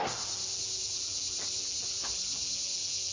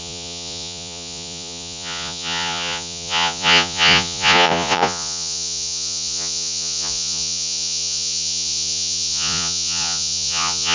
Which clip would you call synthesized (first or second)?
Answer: second